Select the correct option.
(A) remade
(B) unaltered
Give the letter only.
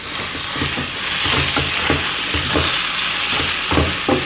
B